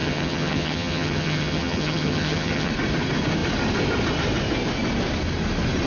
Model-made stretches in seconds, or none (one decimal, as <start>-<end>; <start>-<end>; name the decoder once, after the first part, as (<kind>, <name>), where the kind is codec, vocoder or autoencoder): 0.0-2.7 (vocoder, HiFi-GAN)